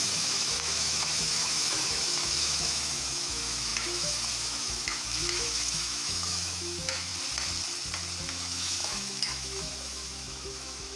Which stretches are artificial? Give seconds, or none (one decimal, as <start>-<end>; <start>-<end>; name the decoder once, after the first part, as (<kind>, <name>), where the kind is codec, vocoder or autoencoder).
0.0-7.1 (autoencoder, DAC-VAE); 8.3-11.0